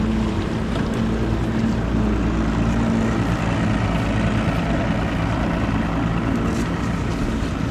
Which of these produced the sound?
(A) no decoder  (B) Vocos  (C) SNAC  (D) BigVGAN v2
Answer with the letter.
A